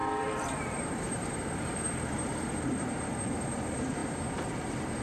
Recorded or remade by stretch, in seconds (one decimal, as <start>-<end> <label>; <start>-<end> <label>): 0.0-4.0 remade; 4.0-5.0 recorded